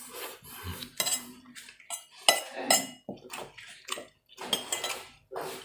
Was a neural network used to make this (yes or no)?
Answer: no